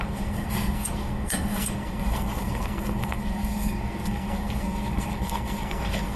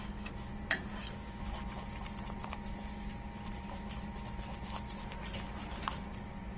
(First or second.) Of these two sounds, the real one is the second